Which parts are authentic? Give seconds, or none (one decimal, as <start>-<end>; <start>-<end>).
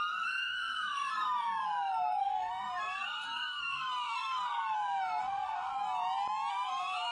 5.7-6.5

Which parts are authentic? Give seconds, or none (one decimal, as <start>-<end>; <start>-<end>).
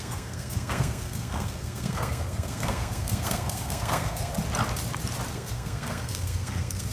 4.3-5.3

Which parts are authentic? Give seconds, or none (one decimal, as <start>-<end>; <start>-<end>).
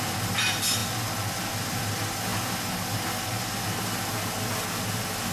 0.0-5.3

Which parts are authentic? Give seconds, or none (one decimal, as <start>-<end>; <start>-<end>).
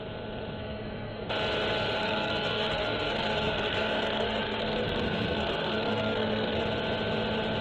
0.0-0.6; 1.3-2.0; 6.6-7.6